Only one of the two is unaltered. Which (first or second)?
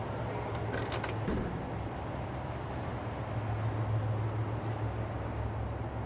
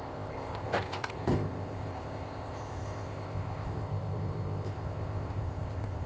first